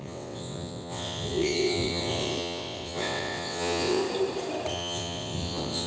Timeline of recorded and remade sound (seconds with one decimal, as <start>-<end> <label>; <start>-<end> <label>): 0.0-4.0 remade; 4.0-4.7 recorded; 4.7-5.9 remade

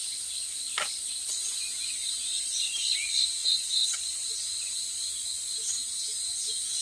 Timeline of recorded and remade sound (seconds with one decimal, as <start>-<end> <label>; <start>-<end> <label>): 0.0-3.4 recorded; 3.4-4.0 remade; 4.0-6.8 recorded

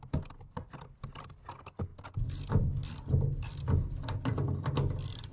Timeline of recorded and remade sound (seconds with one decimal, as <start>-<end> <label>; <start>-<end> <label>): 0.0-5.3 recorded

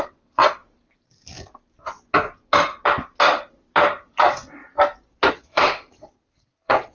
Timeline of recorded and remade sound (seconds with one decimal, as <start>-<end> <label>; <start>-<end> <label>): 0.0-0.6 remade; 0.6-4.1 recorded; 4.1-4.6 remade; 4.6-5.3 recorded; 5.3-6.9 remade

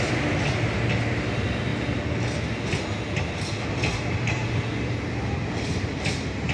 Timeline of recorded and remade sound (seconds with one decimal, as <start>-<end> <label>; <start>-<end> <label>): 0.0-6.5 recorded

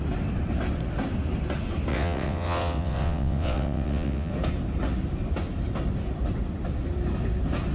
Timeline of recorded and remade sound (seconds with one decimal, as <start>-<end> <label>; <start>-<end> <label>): 0.0-1.9 recorded; 1.9-4.3 remade; 4.3-7.7 recorded